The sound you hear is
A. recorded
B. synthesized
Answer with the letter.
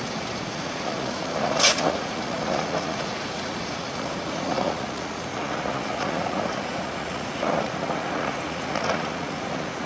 B